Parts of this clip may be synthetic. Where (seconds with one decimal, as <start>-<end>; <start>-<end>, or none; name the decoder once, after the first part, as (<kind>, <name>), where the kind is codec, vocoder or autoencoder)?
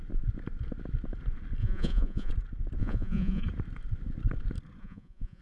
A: 1.6-2.3 (vocoder, Vocos); 2.8-3.4; 4.8-5.4